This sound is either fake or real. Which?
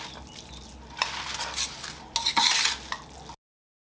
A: real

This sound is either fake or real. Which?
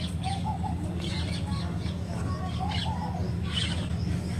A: fake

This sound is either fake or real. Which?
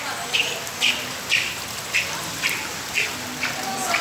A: real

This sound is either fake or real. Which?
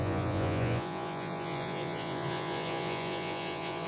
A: fake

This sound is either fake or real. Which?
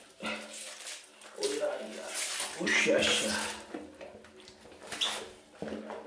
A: real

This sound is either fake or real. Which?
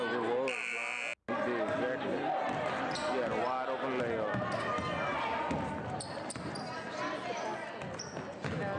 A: real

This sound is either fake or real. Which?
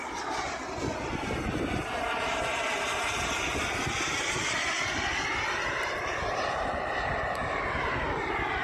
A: fake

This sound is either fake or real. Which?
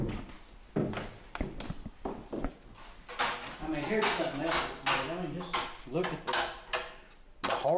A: real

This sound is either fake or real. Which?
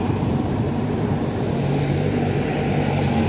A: fake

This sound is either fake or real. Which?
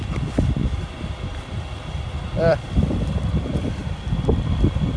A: fake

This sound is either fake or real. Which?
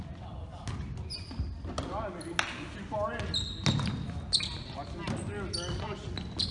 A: real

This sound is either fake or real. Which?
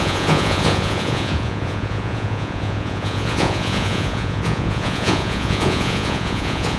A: fake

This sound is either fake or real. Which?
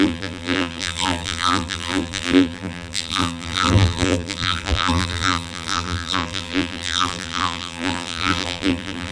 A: fake